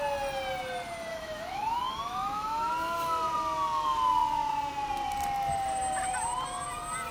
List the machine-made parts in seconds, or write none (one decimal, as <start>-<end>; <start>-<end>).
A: 1.1-2.7